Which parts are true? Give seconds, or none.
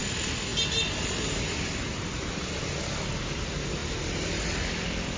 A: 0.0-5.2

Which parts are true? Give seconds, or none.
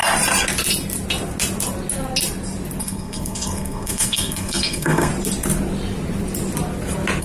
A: 0.0-2.8; 5.1-7.2